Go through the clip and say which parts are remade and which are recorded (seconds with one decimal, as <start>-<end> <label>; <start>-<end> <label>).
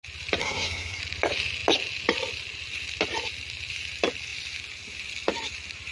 0.0-0.4 recorded; 0.4-1.0 remade; 1.0-5.9 recorded